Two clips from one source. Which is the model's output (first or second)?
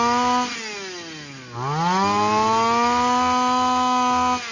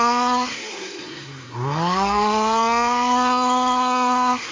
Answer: second